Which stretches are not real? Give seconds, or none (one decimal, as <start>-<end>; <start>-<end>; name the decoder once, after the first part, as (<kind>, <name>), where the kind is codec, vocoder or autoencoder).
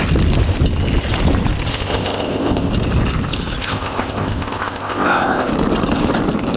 1.7-2.7 (codec, ZipCodec); 3.6-5.5